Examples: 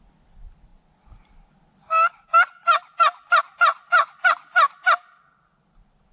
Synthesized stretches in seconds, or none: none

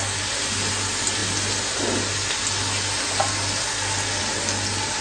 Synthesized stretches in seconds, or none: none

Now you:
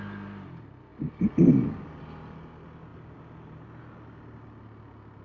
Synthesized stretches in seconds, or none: none

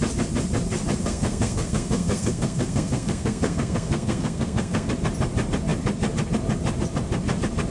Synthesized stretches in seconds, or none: 1.0-4.9 (codec, SNAC)

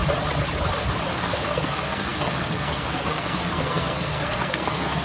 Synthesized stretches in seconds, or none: 1.1-5.0 (codec, SNAC)